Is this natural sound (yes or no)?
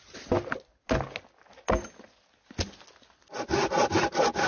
yes